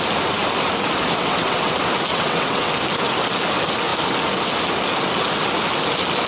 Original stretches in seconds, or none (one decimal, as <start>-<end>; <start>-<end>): 0.0-1.2; 1.7-2.1; 2.7-6.3